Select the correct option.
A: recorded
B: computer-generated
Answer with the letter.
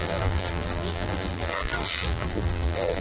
B